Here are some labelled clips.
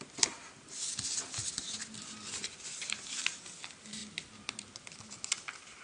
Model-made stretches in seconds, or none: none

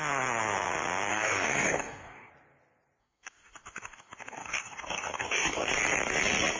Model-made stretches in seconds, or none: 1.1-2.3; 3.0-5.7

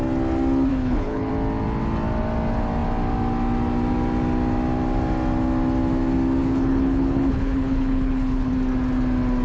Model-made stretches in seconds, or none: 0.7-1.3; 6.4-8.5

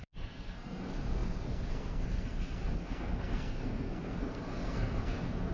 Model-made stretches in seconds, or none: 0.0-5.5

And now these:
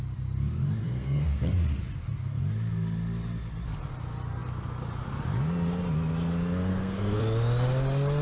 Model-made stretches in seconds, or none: 0.8-1.4; 6.7-7.2

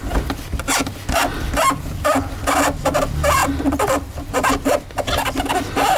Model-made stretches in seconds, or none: 3.4-6.0

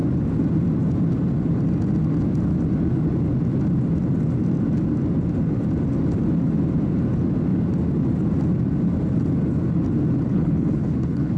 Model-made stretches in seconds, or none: 10.3-11.4

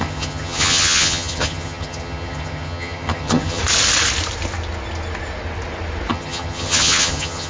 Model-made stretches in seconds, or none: 0.0-3.6; 6.1-7.5